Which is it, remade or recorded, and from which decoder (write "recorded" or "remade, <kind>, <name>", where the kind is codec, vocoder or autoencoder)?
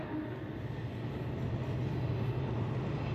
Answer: recorded